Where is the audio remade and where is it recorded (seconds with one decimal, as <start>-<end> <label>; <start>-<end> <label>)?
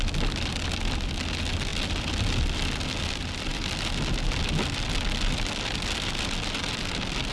0.0-7.3 recorded